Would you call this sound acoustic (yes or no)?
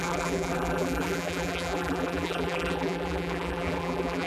no